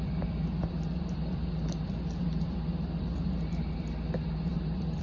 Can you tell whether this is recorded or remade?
remade